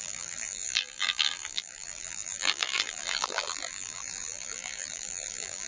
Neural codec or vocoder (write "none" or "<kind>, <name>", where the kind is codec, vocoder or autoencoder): vocoder, BigVGAN v2